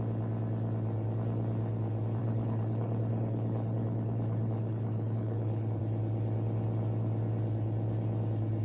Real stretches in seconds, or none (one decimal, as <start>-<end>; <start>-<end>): 0.0-2.2; 5.8-8.6